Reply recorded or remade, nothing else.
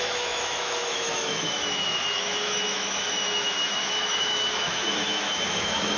remade